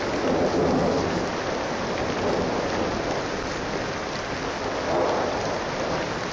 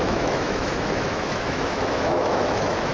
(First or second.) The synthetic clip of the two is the second